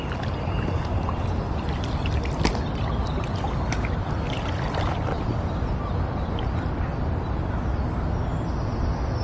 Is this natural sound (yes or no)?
yes